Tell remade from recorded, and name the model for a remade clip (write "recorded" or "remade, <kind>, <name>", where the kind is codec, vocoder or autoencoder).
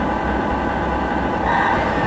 recorded